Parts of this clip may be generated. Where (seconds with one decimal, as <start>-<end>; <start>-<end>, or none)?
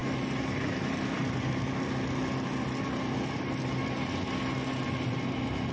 none